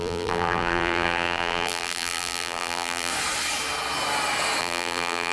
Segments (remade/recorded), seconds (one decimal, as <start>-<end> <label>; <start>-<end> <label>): 0.0-3.1 remade; 3.1-4.6 recorded; 4.6-5.3 remade